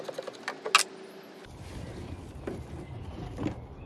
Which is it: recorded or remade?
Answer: recorded